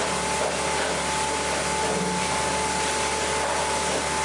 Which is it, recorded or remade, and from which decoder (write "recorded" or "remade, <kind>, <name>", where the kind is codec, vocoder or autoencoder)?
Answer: recorded